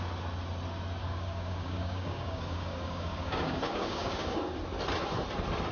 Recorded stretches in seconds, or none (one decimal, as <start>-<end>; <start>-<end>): 0.0-1.0; 4.4-5.7